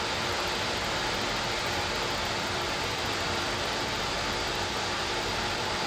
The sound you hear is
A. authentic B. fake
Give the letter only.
B